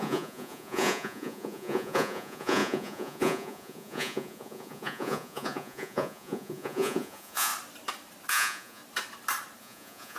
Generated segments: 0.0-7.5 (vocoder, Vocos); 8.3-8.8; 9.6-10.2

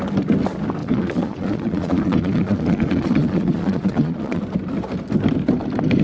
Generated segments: 0.8-4.4 (vocoder, Vocos)